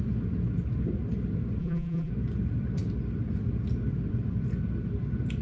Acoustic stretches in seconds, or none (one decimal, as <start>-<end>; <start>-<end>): 0.0-1.6; 2.1-5.4